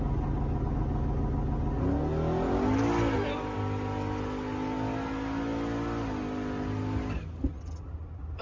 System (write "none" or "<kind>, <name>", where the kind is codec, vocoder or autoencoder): none